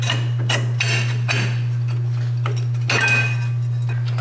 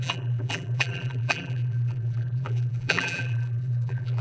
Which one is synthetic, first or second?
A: second